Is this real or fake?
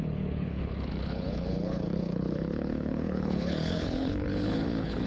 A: fake